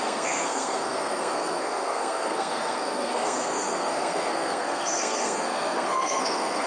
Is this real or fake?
fake